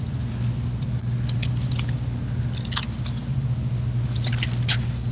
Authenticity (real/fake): real